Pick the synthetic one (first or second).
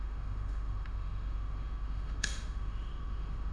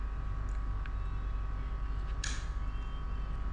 first